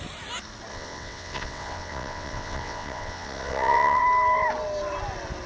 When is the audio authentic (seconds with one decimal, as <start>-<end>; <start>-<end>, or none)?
0.0-0.7; 4.0-5.5